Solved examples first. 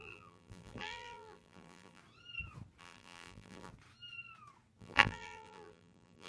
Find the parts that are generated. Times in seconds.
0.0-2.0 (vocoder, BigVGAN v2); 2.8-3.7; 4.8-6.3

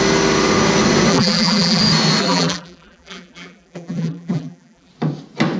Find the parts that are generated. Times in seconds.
1.1-1.8 (vocoder, BigVGAN v2); 2.2-4.9

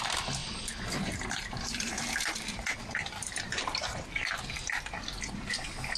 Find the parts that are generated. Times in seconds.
0.4-2.6 (vocoder, BigVGAN v2); 3.2-4.0